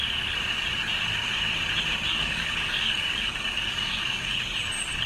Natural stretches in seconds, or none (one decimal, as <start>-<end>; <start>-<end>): 0.0-2.1; 4.4-5.1